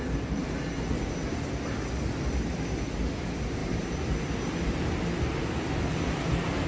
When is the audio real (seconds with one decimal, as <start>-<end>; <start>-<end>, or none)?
0.0-6.7